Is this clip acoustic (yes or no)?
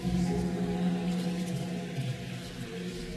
no